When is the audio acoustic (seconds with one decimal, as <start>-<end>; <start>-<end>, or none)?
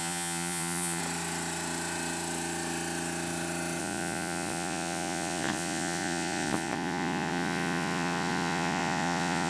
1.0-3.8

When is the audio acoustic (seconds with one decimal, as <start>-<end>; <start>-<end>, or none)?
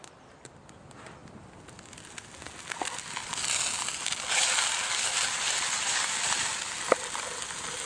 0.0-7.9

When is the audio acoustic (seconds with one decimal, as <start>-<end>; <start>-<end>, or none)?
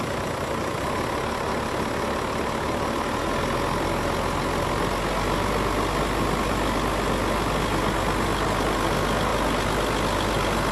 0.0-10.7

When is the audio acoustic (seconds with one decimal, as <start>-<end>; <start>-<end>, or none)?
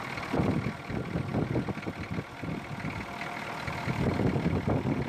0.0-5.1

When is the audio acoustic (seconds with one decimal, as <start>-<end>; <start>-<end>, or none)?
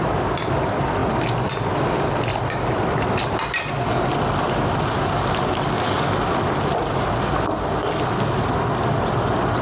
0.0-9.6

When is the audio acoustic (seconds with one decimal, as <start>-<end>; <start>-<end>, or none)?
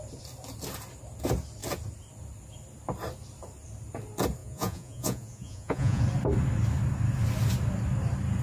0.0-4.4; 6.0-8.4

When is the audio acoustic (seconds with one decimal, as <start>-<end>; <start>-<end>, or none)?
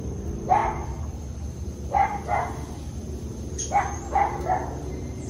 0.0-5.3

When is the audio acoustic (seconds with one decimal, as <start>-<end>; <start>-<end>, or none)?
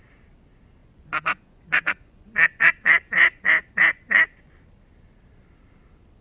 0.0-0.8; 4.5-6.2